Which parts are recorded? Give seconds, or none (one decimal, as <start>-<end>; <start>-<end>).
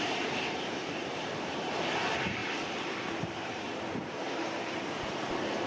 2.4-3.2